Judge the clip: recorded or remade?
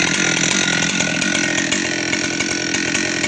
recorded